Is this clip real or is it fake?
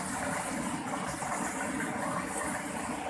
real